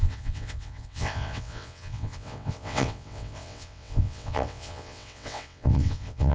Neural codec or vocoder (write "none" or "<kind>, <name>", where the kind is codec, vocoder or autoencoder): vocoder, WaveNeXt